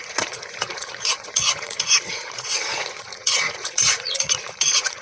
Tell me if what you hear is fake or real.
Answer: fake